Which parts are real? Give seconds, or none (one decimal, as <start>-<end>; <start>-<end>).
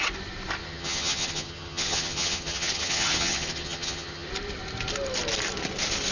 0.0-0.6; 4.3-6.1